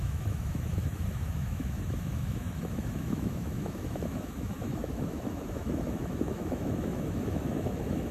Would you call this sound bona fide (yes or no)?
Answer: no